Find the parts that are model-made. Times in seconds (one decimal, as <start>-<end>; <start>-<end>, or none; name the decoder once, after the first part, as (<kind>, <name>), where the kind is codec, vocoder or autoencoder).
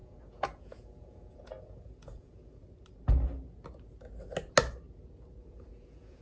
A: 0.0-2.6 (vocoder, Vocos); 5.4-6.2